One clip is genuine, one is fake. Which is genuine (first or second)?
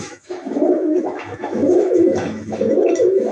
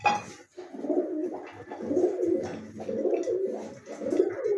second